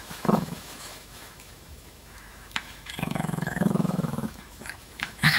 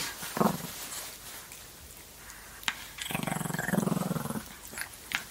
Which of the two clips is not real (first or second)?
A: first